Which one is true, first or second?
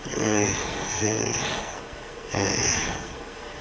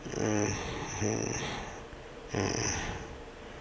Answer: second